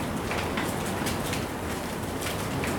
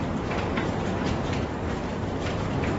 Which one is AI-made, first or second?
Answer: second